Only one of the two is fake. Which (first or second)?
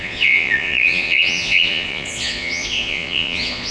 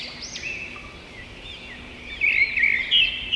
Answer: first